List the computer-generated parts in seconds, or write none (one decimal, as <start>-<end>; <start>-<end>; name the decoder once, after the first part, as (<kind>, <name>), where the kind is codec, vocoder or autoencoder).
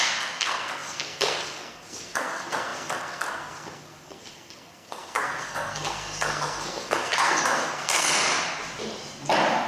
0.0-8.3 (codec, SNAC)